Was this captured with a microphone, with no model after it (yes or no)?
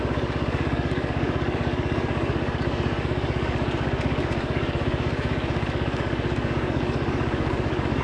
no